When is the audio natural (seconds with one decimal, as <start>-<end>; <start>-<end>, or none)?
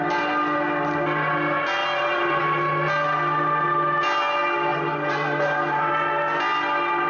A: 0.0-1.8; 2.4-4.7; 5.9-7.1